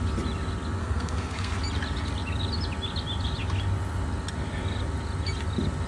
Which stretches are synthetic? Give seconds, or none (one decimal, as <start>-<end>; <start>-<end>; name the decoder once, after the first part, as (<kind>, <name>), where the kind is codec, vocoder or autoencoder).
0.8-1.6 (codec, SNAC)